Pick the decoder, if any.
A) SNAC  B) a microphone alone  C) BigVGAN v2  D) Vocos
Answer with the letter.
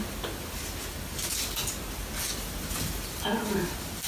B